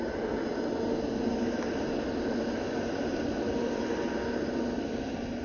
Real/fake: real